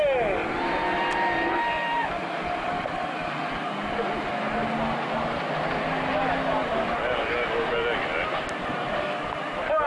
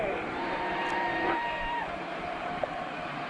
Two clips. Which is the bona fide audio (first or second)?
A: first